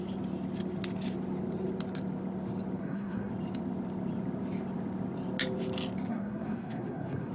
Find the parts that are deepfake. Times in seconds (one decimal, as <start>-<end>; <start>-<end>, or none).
2.8-3.3; 6.1-7.3